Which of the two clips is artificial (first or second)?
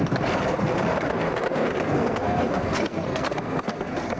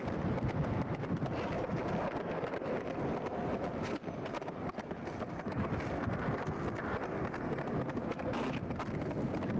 first